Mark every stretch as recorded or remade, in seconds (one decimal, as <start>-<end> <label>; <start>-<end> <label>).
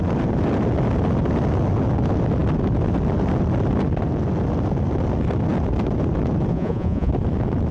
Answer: 0.0-6.5 recorded; 6.5-7.1 remade; 7.1-7.7 recorded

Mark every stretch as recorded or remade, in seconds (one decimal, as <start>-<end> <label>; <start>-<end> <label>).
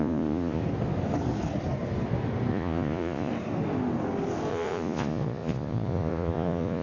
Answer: 0.0-0.6 remade; 0.6-2.5 recorded; 2.5-3.3 remade; 3.3-4.5 recorded; 4.5-6.8 remade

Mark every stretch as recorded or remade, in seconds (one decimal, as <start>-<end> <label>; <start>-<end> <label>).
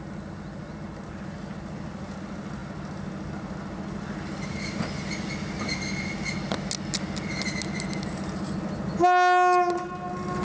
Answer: 0.0-10.4 recorded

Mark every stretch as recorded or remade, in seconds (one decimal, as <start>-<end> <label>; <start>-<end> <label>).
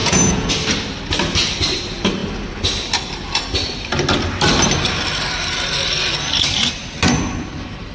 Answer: 0.0-0.5 remade; 0.5-7.9 recorded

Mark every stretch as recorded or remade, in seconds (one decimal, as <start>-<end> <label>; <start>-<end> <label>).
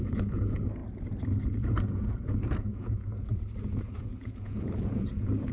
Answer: 0.0-0.8 remade; 0.8-1.5 recorded; 1.5-3.3 remade; 3.3-4.0 recorded; 4.0-5.5 remade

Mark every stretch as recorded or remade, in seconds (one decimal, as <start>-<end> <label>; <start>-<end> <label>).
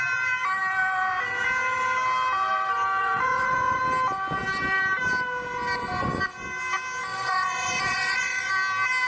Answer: 0.0-3.0 recorded; 3.0-3.8 remade; 3.8-7.1 recorded; 7.1-8.5 remade; 8.5-9.1 recorded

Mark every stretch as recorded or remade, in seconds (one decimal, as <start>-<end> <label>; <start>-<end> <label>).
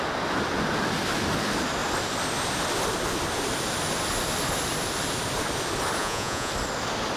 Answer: 0.0-6.0 recorded; 6.0-6.5 remade; 6.5-7.2 recorded